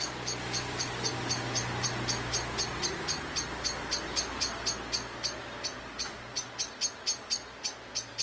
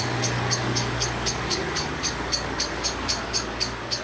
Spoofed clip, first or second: second